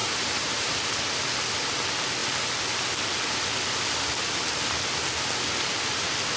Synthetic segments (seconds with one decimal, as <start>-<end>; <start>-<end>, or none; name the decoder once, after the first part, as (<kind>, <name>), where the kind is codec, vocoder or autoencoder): 0.0-0.7 (vocoder, BigVGAN v2)